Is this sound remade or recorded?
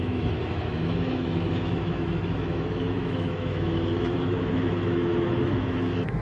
remade